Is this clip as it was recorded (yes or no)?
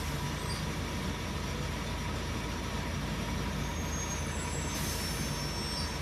yes